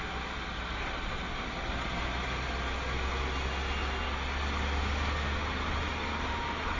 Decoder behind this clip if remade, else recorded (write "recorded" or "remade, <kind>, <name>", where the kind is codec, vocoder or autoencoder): recorded